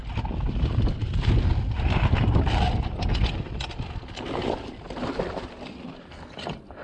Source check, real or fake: real